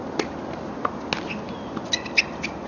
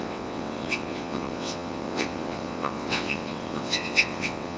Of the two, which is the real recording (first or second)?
first